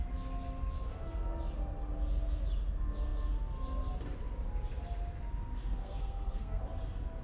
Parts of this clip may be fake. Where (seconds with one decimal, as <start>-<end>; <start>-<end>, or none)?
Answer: 5.8-6.6